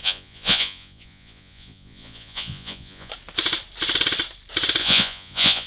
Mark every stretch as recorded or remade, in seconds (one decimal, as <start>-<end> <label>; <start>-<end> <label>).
0.0-3.1 remade; 3.1-4.8 recorded; 4.8-5.7 remade